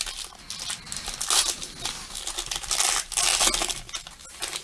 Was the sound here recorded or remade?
recorded